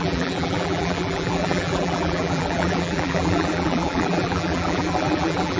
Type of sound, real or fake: fake